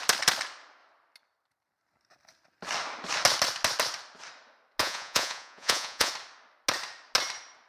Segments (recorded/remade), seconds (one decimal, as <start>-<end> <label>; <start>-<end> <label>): 0.0-4.8 recorded; 4.8-6.1 remade; 6.1-7.7 recorded